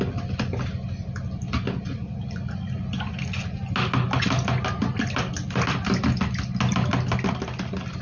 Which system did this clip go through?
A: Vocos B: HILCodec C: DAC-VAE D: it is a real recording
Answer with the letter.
D